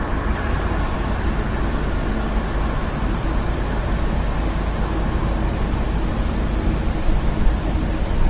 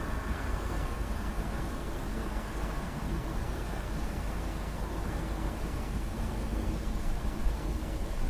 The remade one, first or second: second